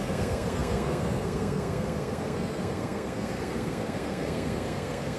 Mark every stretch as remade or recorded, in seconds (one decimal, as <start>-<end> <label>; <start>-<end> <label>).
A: 0.0-5.2 remade